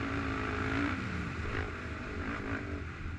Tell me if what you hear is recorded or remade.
recorded